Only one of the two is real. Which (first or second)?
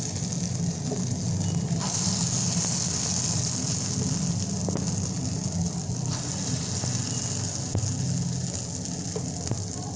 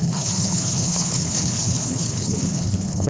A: first